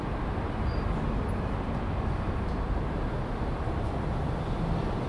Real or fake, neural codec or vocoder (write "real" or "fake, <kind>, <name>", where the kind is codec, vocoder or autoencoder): real